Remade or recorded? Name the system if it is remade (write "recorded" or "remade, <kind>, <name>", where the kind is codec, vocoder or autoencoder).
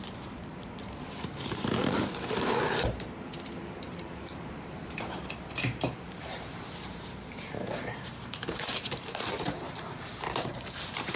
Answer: remade, vocoder, BigVGAN v2